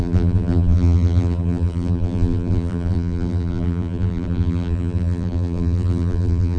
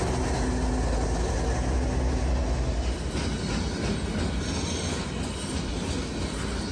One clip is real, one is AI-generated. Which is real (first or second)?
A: second